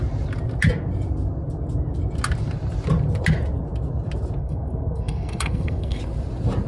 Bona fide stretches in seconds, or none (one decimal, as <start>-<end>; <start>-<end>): 0.0-4.4; 6.0-6.7